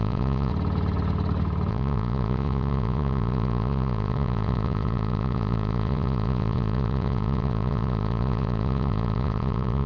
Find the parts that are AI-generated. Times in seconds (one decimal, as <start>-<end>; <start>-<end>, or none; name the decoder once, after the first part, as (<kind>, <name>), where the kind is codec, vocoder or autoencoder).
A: 0.0-0.5 (vocoder, Vocos); 1.7-9.9